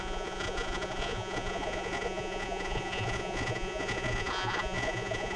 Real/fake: fake